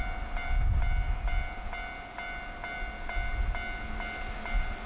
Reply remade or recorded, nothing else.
recorded